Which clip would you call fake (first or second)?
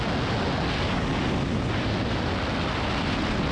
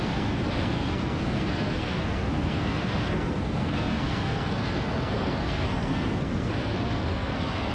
second